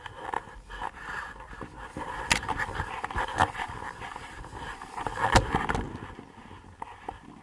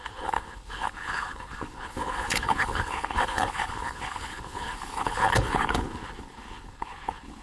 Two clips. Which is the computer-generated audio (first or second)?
second